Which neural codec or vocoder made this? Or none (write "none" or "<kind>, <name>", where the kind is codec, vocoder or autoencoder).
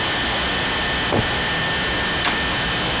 none